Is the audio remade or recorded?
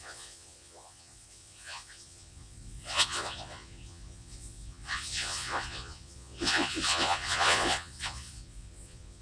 remade